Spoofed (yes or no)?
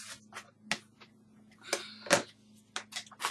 no